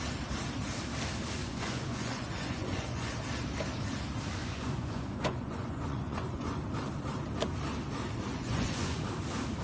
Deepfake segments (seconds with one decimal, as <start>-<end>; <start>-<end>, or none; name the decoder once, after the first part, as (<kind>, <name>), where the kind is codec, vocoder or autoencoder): 1.4-3.1 (vocoder, Vocos); 4.4-6.6; 8.3-9.0